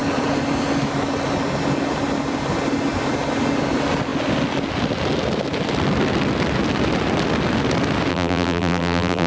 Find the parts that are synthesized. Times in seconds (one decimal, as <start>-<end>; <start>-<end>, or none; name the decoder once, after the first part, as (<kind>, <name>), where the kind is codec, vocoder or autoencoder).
8.1-9.3 (vocoder, BigVGAN v2)